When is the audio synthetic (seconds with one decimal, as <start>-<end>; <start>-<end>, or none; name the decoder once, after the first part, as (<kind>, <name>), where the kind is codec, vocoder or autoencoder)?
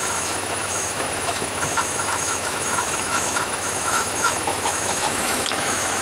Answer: 0.0-6.0 (autoencoder, DAC-VAE)